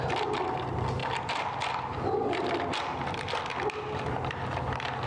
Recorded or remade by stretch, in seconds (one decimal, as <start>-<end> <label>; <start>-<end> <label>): 0.0-5.1 recorded